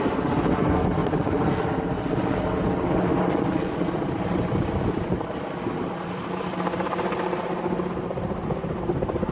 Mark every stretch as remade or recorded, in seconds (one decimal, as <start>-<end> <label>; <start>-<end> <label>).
0.0-1.0 recorded; 1.0-1.5 remade; 1.5-9.3 recorded

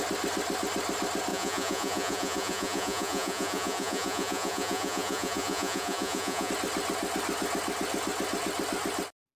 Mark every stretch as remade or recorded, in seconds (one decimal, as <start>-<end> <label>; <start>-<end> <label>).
0.0-1.3 recorded; 1.3-6.5 remade; 6.5-9.4 recorded

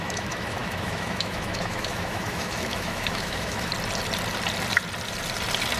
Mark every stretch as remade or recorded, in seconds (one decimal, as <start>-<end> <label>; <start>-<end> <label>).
0.0-3.7 remade; 3.7-5.8 recorded

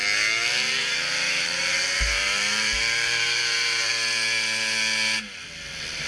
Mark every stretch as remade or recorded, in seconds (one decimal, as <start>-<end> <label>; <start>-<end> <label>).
0.0-0.8 recorded; 0.8-3.9 remade; 3.9-6.1 recorded

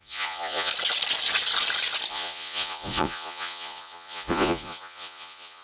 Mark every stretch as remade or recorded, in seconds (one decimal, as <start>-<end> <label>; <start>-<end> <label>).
0.0-0.7 remade; 0.7-2.1 recorded; 2.1-5.6 remade

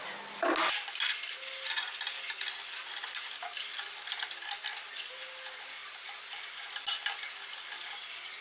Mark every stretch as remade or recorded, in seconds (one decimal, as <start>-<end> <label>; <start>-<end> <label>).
0.0-5.8 recorded; 5.8-6.7 remade; 6.7-8.4 recorded